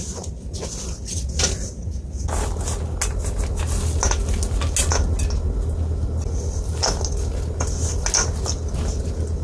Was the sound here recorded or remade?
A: recorded